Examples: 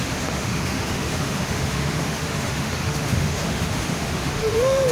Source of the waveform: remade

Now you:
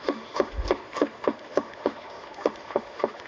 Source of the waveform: remade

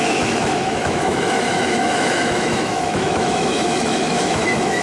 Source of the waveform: remade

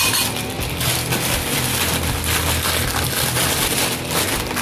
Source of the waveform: recorded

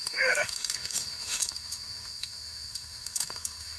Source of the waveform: remade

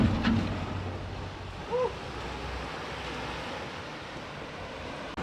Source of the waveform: recorded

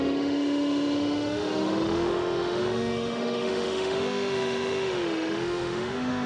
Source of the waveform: remade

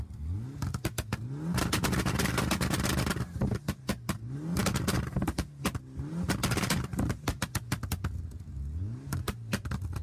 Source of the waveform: recorded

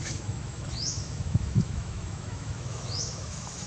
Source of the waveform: remade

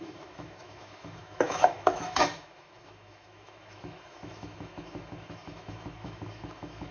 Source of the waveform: remade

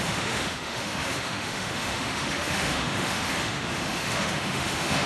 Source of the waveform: remade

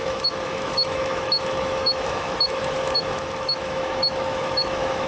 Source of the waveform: remade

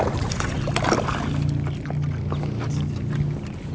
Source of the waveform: recorded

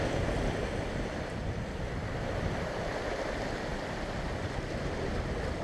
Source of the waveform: recorded